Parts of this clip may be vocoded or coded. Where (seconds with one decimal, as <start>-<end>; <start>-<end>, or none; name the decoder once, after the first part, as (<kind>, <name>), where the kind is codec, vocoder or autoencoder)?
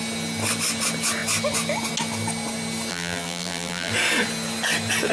2.9-3.9 (vocoder, BigVGAN v2)